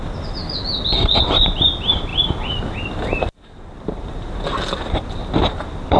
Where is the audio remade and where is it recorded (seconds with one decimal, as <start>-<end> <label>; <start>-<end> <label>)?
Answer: 0.0-6.0 remade